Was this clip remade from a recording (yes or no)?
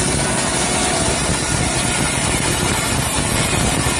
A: yes